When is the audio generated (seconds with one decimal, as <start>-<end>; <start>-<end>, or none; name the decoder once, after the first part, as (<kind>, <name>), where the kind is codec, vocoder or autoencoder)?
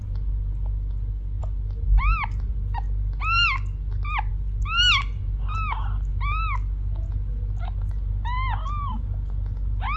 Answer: none